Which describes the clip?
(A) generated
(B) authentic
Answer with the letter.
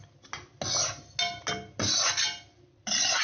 B